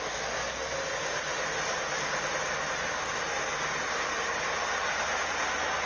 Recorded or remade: recorded